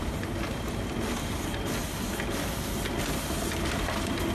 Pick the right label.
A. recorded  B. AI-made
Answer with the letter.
A